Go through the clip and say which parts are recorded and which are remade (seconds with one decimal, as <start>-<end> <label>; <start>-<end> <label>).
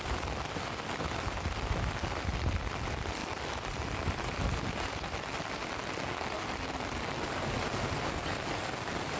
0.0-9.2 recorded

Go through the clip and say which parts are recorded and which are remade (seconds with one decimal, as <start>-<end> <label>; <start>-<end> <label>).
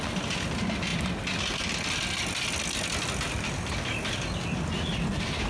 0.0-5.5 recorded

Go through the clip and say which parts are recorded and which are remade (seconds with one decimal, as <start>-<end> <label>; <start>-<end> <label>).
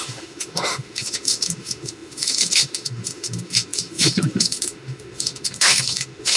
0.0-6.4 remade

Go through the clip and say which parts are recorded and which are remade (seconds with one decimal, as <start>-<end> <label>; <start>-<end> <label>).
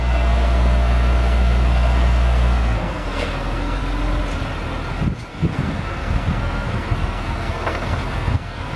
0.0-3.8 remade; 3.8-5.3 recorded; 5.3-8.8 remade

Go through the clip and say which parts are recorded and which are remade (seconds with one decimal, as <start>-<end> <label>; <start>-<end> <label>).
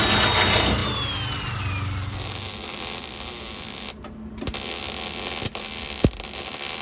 0.0-6.8 recorded